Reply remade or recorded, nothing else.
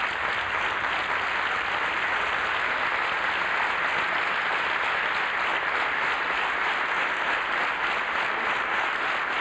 recorded